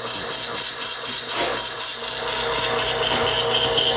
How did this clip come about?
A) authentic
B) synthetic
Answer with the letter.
A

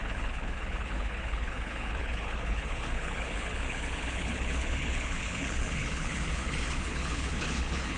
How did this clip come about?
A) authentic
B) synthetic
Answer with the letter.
B